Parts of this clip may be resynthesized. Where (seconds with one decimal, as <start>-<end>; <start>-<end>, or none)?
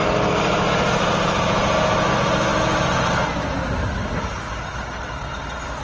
none